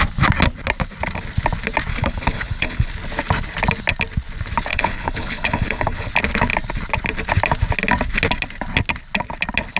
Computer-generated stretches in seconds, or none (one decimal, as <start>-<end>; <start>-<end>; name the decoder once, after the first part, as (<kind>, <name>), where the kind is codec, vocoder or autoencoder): 1.9-2.9 (codec, HILCodec); 4.7-6.1